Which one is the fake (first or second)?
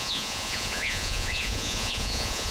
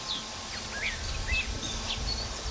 first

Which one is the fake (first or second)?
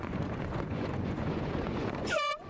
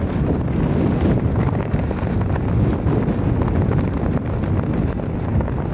first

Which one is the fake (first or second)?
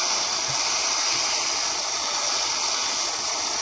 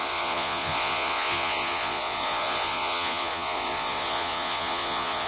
second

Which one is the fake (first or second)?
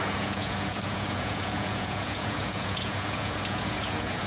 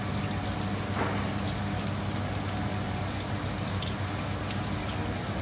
first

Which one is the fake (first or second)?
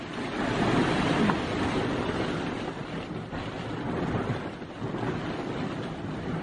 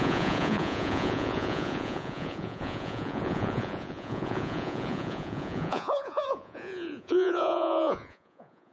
second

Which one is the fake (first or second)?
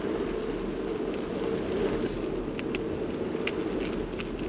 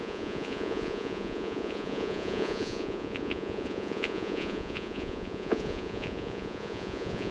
second